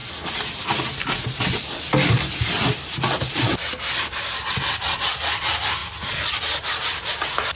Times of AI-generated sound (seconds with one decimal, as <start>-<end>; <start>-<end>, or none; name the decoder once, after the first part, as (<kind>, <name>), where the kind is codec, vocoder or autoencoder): none